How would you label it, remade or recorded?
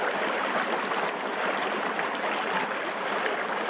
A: recorded